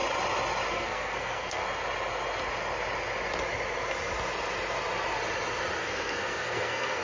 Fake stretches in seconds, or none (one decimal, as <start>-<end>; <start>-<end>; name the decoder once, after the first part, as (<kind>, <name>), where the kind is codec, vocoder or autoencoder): 0.7-1.6 (codec, SNAC); 5.8-7.0